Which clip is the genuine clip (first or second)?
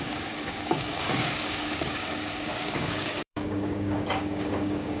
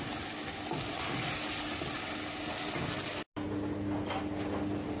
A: second